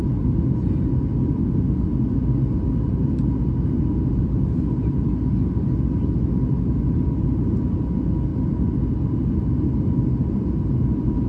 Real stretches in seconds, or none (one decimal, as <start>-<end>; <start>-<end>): 0.0-11.3